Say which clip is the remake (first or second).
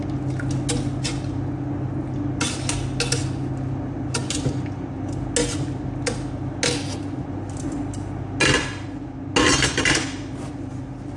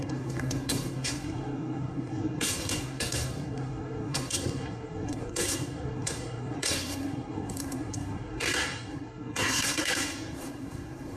second